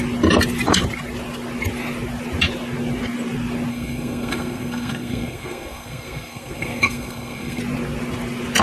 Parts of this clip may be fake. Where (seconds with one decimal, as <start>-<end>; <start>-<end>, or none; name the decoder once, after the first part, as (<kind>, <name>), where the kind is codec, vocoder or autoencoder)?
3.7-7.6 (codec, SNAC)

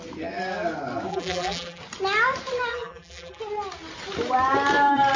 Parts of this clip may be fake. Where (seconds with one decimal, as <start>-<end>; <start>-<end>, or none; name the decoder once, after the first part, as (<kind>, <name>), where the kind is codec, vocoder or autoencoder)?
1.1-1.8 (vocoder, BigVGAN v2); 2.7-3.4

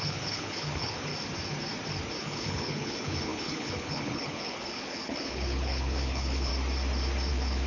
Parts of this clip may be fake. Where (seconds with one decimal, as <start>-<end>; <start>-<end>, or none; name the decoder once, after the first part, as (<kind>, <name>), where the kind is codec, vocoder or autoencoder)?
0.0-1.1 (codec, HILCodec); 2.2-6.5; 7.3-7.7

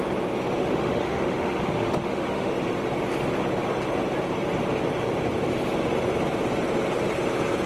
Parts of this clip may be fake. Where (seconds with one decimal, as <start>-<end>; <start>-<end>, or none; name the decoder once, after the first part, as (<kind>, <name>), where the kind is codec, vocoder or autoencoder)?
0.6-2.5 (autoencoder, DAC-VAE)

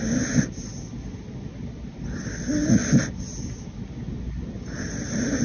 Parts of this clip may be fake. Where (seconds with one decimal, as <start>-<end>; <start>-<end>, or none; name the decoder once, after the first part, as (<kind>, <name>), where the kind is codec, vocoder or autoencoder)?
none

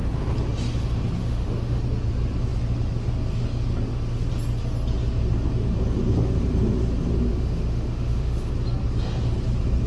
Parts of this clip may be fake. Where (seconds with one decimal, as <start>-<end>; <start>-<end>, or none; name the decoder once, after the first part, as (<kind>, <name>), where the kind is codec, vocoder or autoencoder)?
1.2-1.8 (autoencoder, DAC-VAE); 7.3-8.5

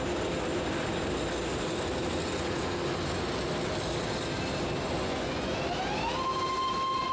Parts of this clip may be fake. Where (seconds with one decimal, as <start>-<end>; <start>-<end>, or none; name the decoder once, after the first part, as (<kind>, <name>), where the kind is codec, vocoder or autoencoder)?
5.0-5.6 (vocoder, Vocos)

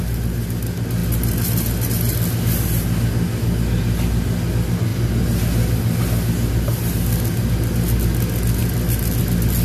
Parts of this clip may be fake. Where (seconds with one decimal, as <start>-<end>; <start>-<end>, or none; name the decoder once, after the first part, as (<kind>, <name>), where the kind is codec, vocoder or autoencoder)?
8.6-9.2 (vocoder, BigVGAN v2)